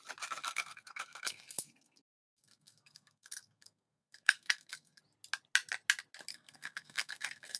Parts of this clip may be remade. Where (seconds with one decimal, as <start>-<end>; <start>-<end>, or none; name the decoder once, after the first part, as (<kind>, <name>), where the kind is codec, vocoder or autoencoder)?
0.4-5.0 (codec, SNAC); 6.3-7.6

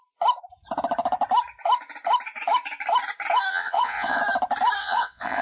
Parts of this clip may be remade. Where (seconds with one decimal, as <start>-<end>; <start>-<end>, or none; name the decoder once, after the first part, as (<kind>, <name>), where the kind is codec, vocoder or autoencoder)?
3.5-4.2 (vocoder, WaveNeXt); 4.8-5.4

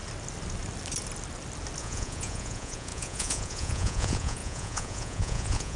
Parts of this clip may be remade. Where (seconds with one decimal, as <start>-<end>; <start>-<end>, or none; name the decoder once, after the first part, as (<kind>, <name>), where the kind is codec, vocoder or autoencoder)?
1.8-5.8 (vocoder, Vocos)